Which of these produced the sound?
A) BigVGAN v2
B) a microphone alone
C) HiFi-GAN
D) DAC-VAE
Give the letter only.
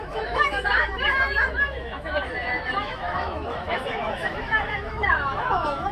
D